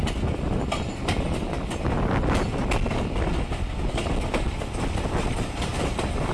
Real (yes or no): yes